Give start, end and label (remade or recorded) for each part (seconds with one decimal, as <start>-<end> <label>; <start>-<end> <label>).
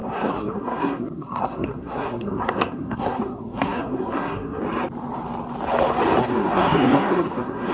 0.0-4.6 remade; 4.6-6.2 recorded; 6.2-7.7 remade